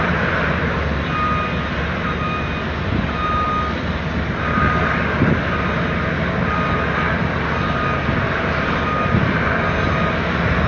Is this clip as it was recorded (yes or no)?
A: yes